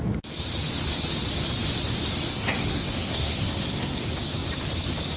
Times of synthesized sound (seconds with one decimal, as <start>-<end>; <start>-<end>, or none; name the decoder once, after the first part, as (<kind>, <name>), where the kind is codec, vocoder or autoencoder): 2.3-4.0 (codec, SNAC)